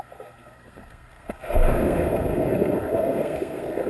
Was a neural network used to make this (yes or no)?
yes